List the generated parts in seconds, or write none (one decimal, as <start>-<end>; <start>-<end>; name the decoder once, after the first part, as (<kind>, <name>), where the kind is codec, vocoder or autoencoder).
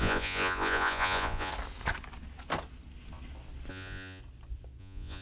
0.0-1.5 (vocoder, Vocos); 3.7-4.2; 4.8-5.2